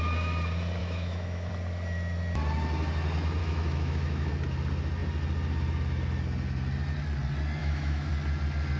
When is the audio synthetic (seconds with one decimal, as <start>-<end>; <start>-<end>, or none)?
0.8-1.5; 3.4-4.3; 7.6-8.1